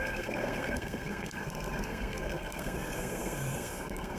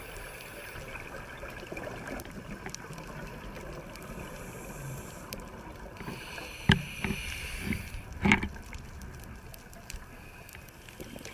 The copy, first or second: first